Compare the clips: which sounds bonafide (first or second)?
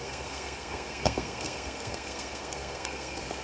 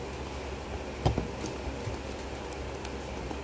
second